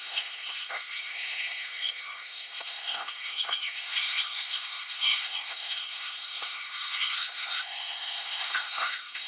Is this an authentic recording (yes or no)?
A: no